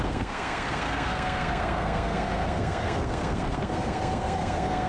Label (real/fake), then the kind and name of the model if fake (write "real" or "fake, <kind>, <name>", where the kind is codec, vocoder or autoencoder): fake, codec, SNAC